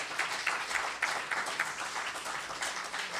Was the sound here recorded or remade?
recorded